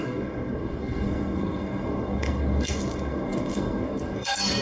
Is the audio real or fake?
fake